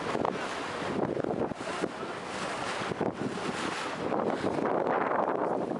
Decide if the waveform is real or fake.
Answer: real